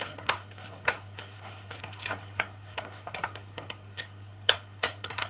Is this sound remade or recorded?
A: remade